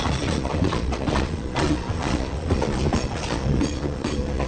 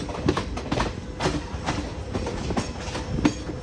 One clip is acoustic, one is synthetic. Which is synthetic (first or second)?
first